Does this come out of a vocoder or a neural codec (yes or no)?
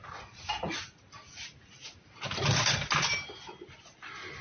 no